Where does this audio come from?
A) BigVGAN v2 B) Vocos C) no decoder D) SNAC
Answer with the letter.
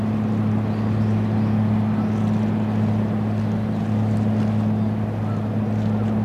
C